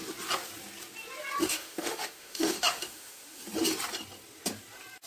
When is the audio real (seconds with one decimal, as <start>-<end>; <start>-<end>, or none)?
0.0-1.5; 3.4-5.1